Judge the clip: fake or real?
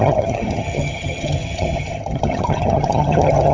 fake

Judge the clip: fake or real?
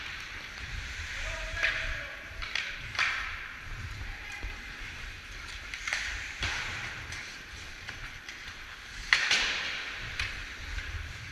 fake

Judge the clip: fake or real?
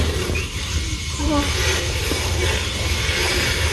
fake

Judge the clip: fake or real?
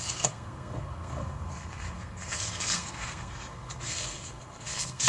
fake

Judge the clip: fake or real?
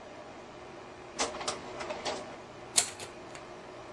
fake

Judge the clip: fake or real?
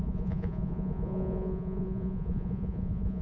fake